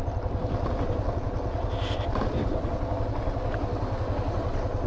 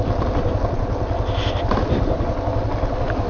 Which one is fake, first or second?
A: second